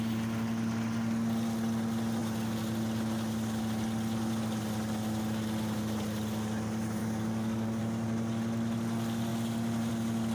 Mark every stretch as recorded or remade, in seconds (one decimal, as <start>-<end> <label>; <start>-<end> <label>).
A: 0.0-7.0 recorded; 7.0-7.8 remade; 7.8-10.3 recorded